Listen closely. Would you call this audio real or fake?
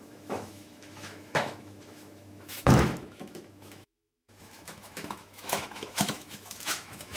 fake